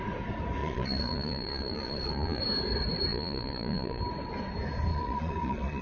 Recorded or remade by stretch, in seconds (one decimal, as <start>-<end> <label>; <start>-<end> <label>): 0.0-0.6 recorded; 0.6-2.4 remade; 2.4-3.1 recorded; 3.1-4.0 remade; 4.0-4.9 recorded; 4.9-5.8 remade